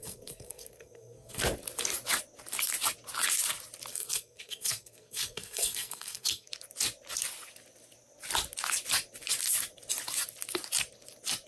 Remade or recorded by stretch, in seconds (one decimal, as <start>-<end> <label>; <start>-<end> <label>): 0.0-1.4 remade; 1.4-3.9 recorded; 3.9-6.5 remade; 6.5-11.5 recorded